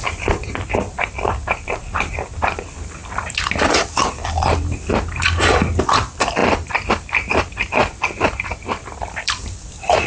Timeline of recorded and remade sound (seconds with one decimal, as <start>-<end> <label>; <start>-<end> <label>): 0.0-10.1 remade